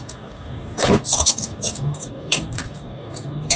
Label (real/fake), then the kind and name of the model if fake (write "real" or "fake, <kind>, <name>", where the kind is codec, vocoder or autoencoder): fake, codec, DAC